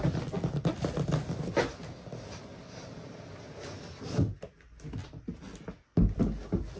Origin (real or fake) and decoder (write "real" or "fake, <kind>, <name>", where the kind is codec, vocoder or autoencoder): real